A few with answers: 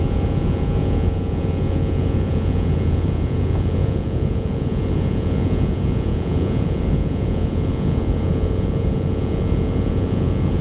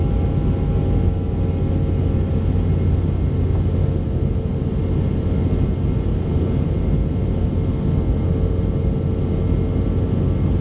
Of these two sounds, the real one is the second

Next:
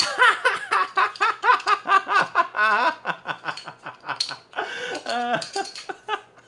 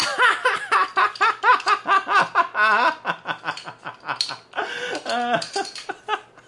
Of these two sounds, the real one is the second